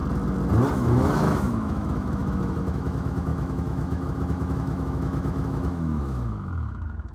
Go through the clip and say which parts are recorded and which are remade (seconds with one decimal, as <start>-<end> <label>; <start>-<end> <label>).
0.0-0.7 recorded; 0.7-7.1 remade